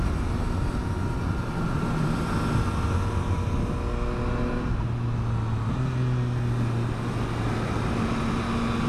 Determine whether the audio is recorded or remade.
recorded